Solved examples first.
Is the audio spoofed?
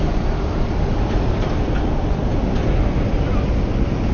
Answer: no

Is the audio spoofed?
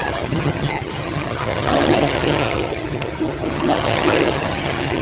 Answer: yes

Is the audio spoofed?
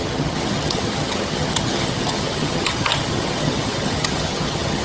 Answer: yes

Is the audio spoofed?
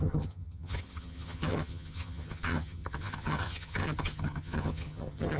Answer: yes